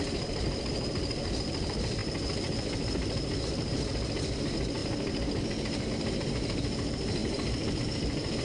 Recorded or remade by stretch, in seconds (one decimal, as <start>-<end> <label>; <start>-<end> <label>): 0.0-2.0 remade; 2.0-3.4 recorded; 3.4-4.8 remade; 4.8-5.9 recorded; 5.9-8.4 remade